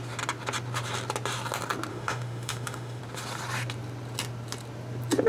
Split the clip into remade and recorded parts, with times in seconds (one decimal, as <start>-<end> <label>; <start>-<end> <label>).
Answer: 0.0-1.9 recorded; 1.9-3.0 remade; 3.0-5.3 recorded